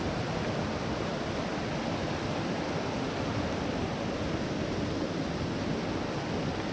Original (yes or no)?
yes